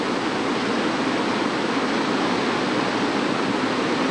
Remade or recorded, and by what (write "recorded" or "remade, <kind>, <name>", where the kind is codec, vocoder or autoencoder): recorded